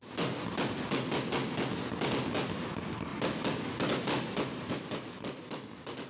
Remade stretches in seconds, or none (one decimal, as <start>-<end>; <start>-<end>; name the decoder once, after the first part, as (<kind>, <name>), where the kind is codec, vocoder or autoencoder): none